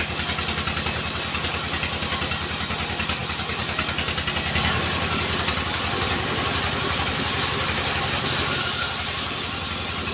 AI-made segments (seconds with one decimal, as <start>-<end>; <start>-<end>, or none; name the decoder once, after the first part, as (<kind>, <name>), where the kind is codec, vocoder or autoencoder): none